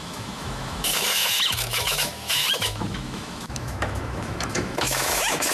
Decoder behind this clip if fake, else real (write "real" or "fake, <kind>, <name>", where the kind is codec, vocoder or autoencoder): fake, autoencoder, DAC-VAE